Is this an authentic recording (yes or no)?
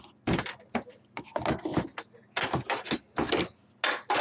yes